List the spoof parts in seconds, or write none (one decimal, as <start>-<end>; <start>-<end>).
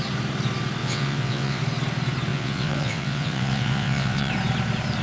0.8-1.6; 2.3-4.3